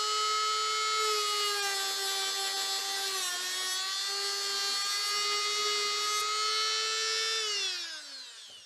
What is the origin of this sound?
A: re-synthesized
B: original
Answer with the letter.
B